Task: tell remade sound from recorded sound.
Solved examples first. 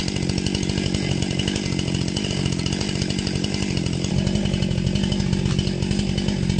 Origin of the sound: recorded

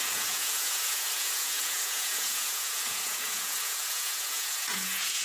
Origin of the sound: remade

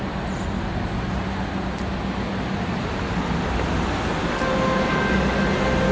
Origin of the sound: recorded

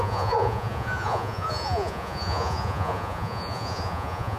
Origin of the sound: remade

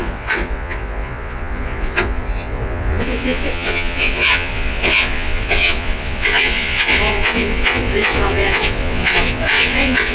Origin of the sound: remade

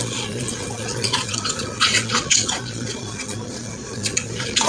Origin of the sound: remade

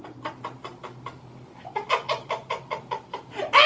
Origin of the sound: recorded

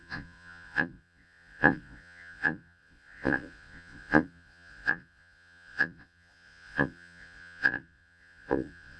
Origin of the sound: remade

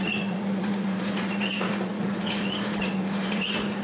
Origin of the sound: remade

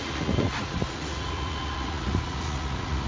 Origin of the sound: remade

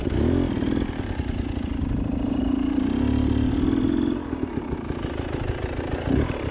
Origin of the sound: recorded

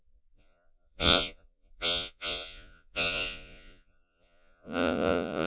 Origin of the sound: remade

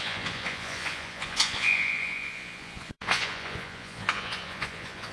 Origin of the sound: remade